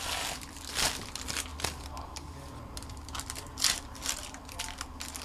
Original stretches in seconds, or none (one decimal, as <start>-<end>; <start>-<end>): 0.0-1.5; 4.6-5.2